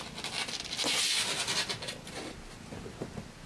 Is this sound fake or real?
real